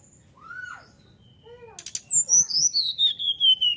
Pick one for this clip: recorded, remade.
recorded